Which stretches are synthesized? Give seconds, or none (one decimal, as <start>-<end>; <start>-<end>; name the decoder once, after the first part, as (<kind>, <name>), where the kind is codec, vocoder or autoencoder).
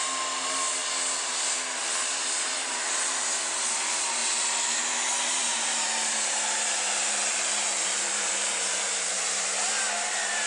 4.2-4.8 (vocoder, BigVGAN v2); 5.4-9.8